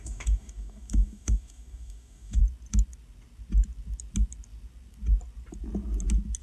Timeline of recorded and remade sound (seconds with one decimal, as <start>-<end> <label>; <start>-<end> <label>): 0.0-2.4 remade; 2.4-6.4 recorded